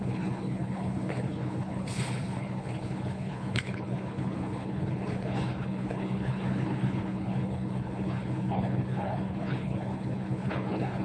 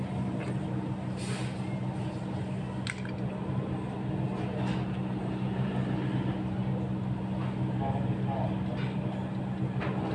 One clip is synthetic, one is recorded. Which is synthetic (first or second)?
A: first